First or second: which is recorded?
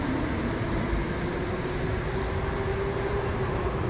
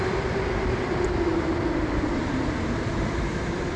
first